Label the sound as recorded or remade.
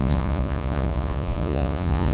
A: remade